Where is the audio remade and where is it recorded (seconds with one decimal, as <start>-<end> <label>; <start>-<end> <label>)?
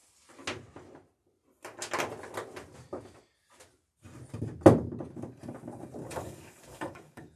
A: 0.0-6.0 recorded; 6.0-7.4 remade